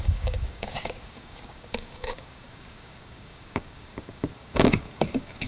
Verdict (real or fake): fake